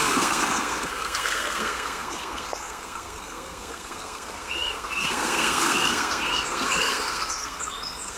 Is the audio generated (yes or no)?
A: yes